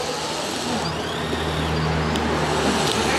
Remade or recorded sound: recorded